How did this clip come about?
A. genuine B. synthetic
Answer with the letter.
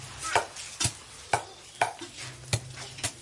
A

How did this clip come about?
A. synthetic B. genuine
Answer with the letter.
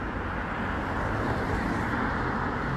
B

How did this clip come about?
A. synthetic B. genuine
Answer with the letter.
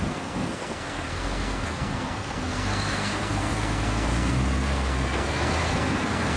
A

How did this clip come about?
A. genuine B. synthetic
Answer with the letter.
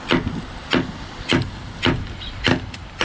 A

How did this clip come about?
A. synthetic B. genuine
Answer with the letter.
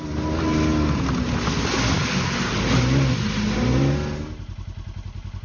B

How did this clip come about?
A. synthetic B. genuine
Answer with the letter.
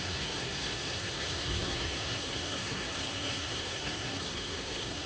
A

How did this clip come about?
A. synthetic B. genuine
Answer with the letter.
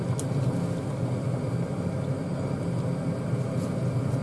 B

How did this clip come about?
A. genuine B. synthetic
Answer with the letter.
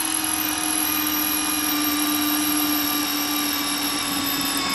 A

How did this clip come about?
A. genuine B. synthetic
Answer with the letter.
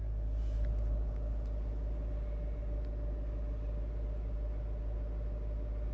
A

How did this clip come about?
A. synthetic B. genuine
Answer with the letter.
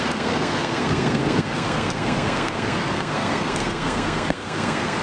A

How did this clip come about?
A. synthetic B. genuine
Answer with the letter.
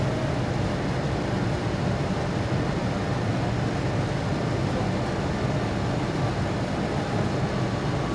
B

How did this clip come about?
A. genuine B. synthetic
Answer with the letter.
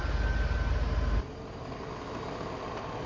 A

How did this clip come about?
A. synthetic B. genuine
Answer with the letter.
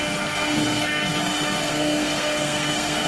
A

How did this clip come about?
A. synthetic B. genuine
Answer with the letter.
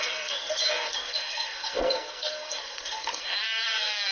A